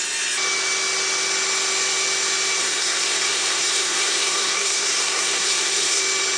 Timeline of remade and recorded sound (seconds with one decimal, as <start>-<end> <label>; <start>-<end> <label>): 0.0-2.6 recorded; 2.6-6.0 remade; 6.0-6.4 recorded